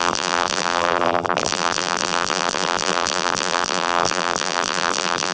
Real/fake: fake